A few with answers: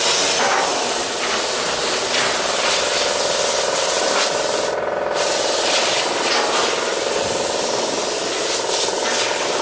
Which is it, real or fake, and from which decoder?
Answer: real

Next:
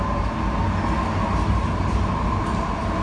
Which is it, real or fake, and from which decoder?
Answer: real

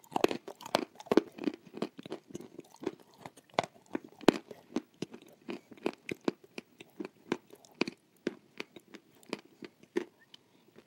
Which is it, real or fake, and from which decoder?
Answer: real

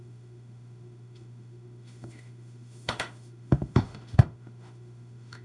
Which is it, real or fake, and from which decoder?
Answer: fake, autoencoder, DAC-VAE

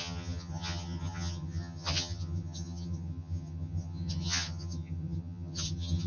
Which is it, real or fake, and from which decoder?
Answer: fake, vocoder, HiFi-GAN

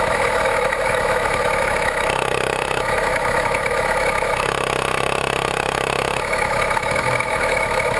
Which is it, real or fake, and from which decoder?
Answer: fake, autoencoder, DAC-VAE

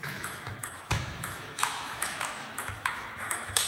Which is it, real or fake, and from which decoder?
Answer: fake, autoencoder, DAC-VAE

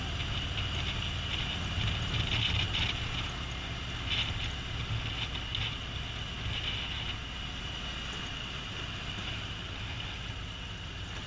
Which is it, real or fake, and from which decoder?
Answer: real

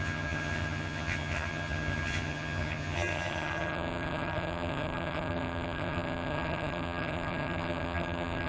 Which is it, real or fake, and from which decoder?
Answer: fake, vocoder, HiFi-GAN